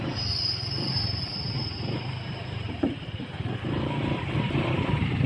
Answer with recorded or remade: remade